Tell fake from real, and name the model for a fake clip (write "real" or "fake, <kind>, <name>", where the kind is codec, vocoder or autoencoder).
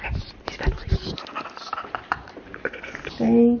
real